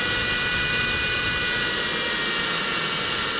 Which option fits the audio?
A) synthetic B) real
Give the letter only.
B